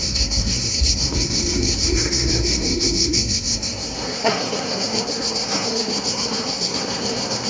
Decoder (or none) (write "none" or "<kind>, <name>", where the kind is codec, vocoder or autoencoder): codec, SNAC